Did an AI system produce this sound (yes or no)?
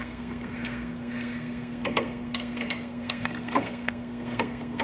yes